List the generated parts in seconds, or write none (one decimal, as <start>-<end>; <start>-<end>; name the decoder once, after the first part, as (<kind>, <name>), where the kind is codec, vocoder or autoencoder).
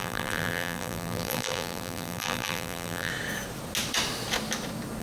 0.0-3.1 (vocoder, BigVGAN v2)